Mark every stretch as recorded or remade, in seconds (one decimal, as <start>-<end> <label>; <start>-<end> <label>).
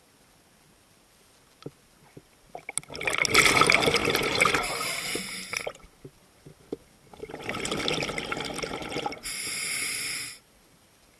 0.0-8.8 recorded; 8.8-11.2 remade